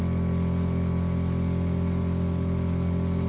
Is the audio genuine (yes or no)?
yes